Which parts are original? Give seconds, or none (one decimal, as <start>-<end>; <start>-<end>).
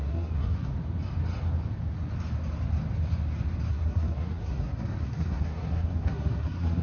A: 0.7-3.7